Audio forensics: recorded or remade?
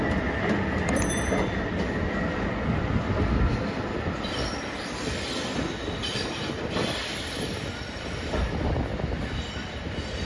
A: remade